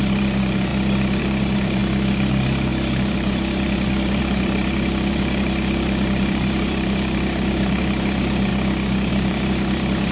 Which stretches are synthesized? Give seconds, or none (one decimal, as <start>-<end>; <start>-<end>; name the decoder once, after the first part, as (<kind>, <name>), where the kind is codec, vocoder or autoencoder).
0.0-0.7 (vocoder, BigVGAN v2); 1.2-1.8; 2.3-8.5; 9.1-10.1